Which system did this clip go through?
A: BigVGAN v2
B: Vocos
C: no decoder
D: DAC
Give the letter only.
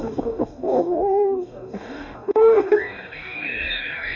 D